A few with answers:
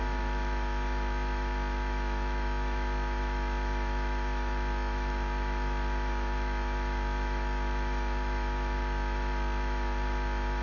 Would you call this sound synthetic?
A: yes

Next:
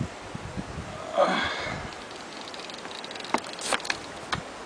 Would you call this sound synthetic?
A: no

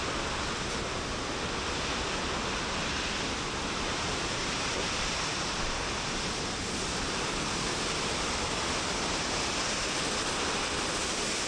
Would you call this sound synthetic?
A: no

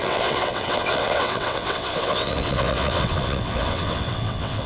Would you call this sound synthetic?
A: yes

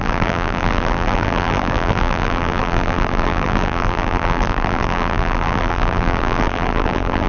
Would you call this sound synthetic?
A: yes